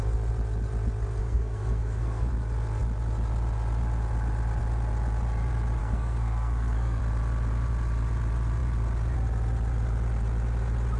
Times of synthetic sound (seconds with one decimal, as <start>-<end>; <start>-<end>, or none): 1.2-2.3; 5.8-7.0